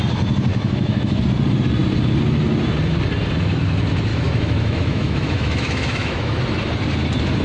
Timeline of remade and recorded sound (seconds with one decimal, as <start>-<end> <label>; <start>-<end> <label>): 0.0-0.5 recorded; 0.5-1.2 remade; 1.2-4.1 recorded; 4.1-6.4 remade; 6.4-7.4 recorded